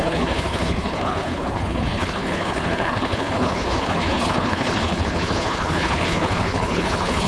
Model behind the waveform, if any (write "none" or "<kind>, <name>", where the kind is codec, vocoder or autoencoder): codec, HILCodec